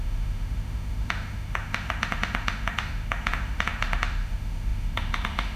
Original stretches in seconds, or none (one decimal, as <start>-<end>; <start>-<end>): none